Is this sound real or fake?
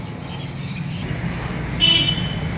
real